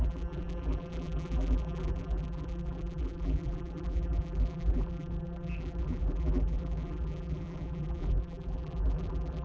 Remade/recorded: remade